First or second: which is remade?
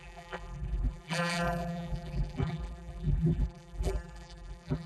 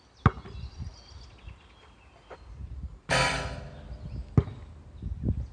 first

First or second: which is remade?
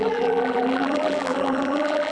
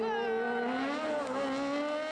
first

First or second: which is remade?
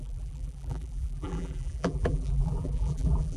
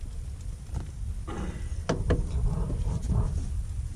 first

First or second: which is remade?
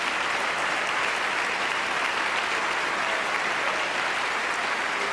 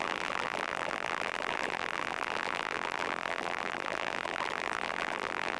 second